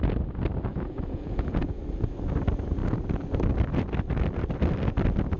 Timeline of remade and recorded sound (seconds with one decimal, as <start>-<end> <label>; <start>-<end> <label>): 0.0-0.7 recorded; 0.7-1.8 remade; 1.8-5.4 recorded